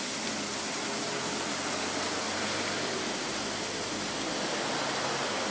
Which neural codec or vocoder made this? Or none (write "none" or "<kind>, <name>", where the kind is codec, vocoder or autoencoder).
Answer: none